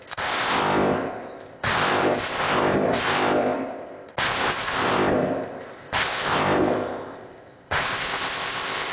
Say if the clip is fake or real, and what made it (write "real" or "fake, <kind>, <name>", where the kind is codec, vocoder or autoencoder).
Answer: fake, codec, ZipCodec